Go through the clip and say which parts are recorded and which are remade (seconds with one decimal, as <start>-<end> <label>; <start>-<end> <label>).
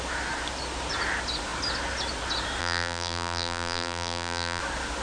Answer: 0.0-2.6 recorded; 2.6-4.6 remade; 4.6-5.0 recorded